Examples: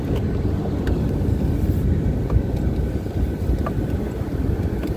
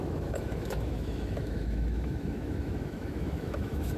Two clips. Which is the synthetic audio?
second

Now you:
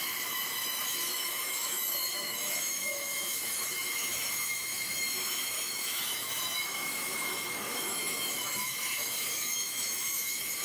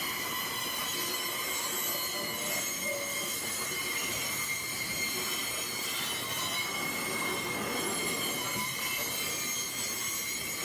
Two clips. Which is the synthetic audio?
first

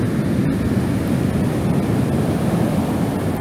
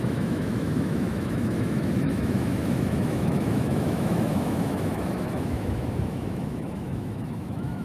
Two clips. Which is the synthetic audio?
second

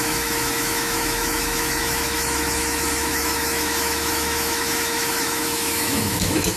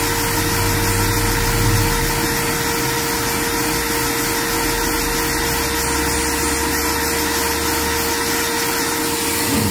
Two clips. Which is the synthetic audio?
first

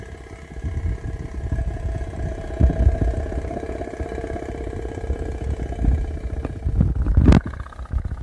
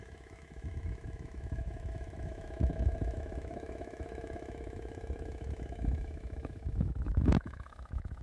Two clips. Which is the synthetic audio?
second